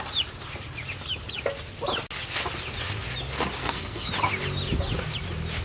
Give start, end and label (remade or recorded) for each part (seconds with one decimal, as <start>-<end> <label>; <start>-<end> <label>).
0.0-3.6 recorded; 3.6-4.1 remade; 4.1-5.6 recorded

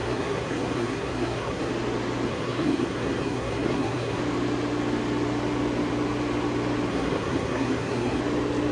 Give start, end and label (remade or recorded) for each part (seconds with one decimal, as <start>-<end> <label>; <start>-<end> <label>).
0.0-1.7 remade; 1.7-2.3 recorded; 2.3-4.2 remade; 4.2-6.9 recorded; 6.9-8.2 remade; 8.2-8.7 recorded

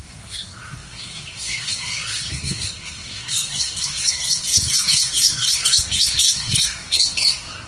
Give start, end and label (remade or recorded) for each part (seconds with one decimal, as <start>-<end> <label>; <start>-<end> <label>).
0.0-7.7 remade